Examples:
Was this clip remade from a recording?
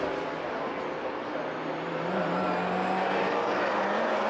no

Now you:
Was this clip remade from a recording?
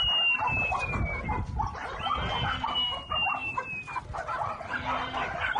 no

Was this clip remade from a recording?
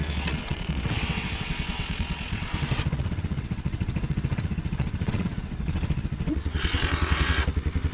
yes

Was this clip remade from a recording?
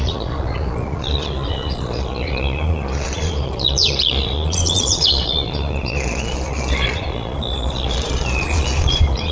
yes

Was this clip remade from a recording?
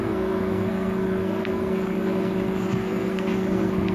yes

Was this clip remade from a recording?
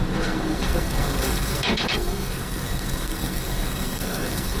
yes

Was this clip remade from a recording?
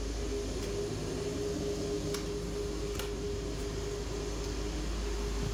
no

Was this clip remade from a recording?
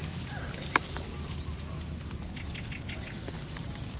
no